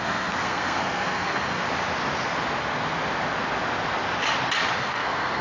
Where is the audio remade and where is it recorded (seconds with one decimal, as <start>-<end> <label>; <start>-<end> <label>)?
0.0-1.6 remade; 1.6-4.8 recorded; 4.8-5.4 remade